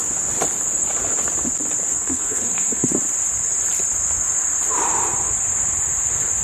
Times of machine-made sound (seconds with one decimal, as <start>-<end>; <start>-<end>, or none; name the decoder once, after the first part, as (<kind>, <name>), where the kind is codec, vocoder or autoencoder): 1.9-2.9 (codec, SNAC)